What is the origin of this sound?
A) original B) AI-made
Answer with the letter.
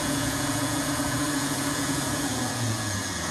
B